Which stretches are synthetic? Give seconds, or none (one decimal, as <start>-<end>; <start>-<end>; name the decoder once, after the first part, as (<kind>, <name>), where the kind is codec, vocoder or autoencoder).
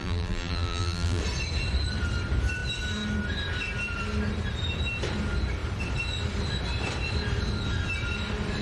0.0-1.2 (vocoder, BigVGAN v2)